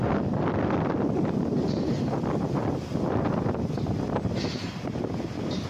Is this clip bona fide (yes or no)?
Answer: yes